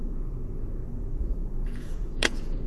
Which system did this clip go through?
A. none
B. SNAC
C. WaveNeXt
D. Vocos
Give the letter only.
D